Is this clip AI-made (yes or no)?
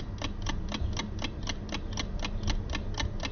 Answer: no